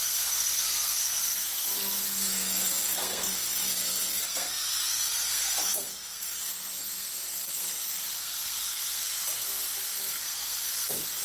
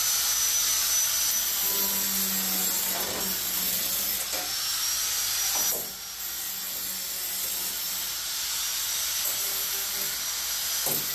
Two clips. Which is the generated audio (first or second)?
first